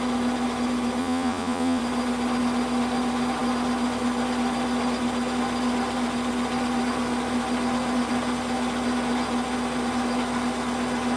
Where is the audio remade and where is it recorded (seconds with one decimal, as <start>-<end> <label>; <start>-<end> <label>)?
0.0-1.0 recorded; 1.0-1.8 remade; 1.8-11.2 recorded